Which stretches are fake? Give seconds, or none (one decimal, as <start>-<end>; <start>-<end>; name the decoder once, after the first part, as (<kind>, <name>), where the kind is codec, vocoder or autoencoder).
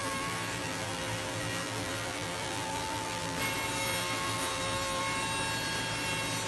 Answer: 0.0-3.4 (vocoder, BigVGAN v2); 3.9-5.0